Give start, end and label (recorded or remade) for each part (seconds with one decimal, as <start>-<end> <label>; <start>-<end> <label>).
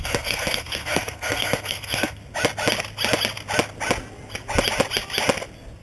0.0-2.2 remade; 2.2-5.8 recorded